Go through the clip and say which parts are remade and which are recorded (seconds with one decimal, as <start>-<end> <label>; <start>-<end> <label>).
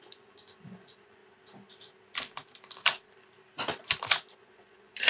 0.0-1.2 remade; 1.2-4.3 recorded; 4.3-5.1 remade